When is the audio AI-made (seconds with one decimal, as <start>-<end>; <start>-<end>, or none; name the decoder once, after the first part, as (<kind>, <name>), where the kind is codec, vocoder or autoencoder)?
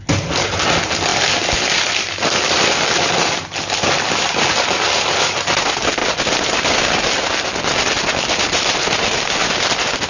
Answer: none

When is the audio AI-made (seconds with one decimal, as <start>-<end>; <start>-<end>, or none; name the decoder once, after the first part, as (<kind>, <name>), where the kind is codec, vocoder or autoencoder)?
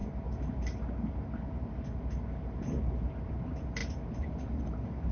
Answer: none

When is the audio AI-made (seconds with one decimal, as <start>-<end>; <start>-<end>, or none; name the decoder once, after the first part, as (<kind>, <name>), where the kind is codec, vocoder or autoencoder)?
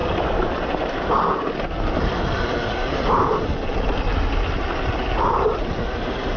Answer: 0.0-1.1 (vocoder, BigVGAN v2)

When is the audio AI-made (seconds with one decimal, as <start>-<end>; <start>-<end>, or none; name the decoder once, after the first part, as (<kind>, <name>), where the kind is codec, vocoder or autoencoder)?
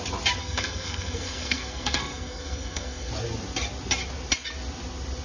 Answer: 0.4-3.1 (codec, SNAC)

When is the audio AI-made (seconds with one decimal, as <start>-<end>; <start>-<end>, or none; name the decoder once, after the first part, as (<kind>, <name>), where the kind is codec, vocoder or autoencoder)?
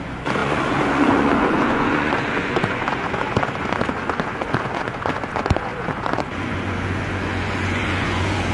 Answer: 0.0-8.5 (vocoder, Vocos)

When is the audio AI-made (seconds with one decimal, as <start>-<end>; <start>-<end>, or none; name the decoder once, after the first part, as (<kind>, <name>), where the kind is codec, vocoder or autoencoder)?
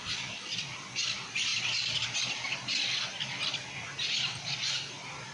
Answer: none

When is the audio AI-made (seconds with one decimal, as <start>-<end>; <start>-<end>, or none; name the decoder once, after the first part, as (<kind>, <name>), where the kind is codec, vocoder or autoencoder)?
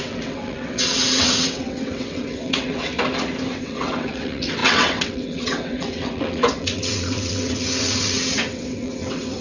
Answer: 0.0-2.9 (vocoder, WaveNeXt); 3.6-9.4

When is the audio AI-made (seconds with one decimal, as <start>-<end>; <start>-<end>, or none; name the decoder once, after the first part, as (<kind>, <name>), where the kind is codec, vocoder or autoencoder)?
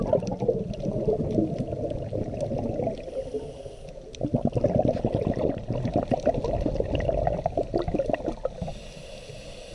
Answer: none